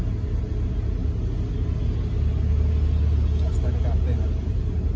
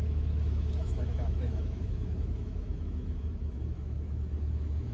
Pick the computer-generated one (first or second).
second